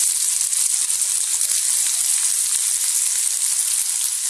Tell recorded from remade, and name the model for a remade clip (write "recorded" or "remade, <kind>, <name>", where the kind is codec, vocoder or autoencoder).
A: recorded